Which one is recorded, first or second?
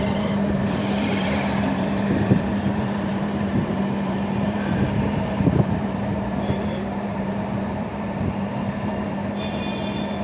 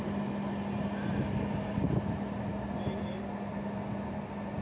second